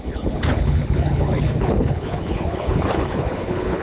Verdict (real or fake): fake